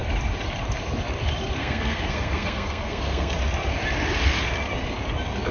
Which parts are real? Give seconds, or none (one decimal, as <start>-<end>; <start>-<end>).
0.0-1.6; 3.3-5.5